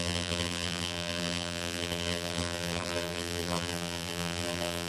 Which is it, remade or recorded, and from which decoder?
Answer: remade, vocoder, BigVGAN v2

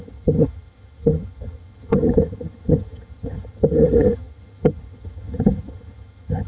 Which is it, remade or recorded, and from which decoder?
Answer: remade, vocoder, HiFi-GAN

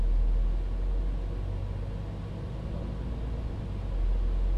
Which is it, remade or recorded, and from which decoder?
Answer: recorded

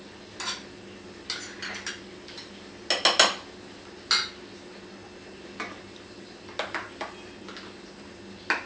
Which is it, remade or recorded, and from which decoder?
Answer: recorded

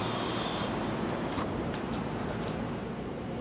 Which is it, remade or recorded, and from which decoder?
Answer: remade, vocoder, BigVGAN v2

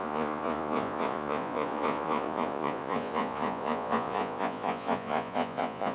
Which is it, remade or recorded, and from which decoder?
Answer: remade, vocoder, Vocos